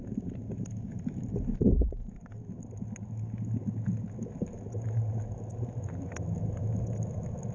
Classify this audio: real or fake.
real